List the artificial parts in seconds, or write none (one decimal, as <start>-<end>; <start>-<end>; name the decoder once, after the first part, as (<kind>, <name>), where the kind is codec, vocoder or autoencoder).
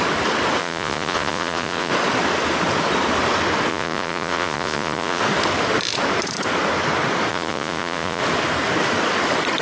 0.6-1.9 (vocoder, Vocos); 3.7-5.2; 7.3-8.2